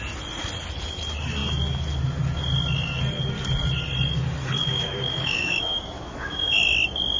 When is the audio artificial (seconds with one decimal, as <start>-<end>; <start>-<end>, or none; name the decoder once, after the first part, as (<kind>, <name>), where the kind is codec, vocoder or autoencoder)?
4.6-6.6 (autoencoder, DAC-VAE)

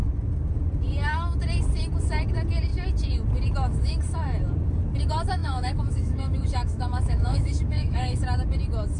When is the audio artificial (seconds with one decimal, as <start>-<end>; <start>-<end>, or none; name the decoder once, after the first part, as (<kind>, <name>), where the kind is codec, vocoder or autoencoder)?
5.4-8.2 (autoencoder, DAC-VAE)

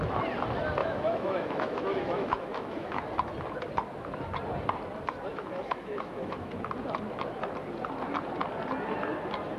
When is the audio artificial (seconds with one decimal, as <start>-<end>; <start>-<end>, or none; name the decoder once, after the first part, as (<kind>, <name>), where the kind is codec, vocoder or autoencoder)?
0.8-3.0 (autoencoder, DAC-VAE); 5.3-6.5

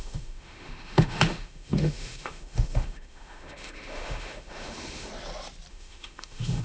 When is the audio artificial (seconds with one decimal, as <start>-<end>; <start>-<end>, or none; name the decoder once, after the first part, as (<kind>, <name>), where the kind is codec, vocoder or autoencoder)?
0.0-5.1 (autoencoder, DAC-VAE); 5.7-6.6

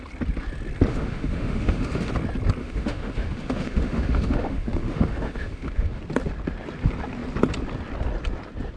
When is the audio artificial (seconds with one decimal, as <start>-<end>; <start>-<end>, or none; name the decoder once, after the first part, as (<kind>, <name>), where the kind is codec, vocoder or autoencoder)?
0.9-2.1 (autoencoder, DAC-VAE); 2.6-6.0

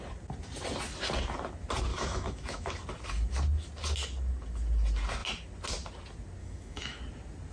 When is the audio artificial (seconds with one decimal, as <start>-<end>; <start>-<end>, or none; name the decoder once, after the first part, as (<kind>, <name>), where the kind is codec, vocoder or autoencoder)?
1.9-2.7 (autoencoder, DAC-VAE); 6.4-7.0

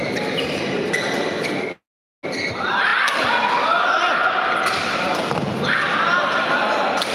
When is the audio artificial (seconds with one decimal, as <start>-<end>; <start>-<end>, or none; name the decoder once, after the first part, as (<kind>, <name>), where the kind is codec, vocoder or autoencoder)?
none